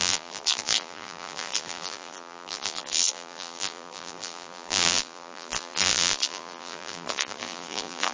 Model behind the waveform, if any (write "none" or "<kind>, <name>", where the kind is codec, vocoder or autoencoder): vocoder, BigVGAN v2